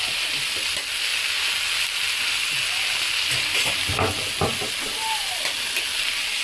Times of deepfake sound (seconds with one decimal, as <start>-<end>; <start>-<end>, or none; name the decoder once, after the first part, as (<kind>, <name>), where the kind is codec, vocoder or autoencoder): none